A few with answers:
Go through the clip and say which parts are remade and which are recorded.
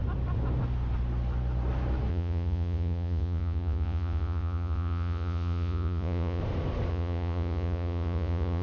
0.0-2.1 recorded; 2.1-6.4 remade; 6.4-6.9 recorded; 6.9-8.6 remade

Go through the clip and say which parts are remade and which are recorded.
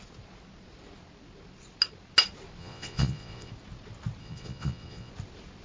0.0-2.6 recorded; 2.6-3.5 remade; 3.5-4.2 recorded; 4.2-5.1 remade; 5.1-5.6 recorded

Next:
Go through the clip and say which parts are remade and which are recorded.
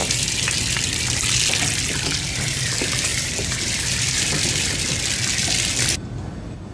0.0-3.1 recorded; 3.1-4.3 remade; 4.3-6.7 recorded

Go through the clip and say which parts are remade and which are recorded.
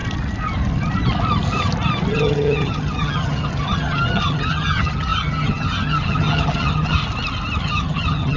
0.0-2.1 recorded; 2.1-7.0 remade; 7.0-7.6 recorded; 7.6-8.4 remade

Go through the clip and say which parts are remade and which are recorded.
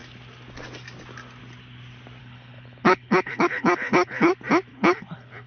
0.0-2.2 recorded; 2.2-4.3 remade; 4.3-4.7 recorded; 4.7-5.5 remade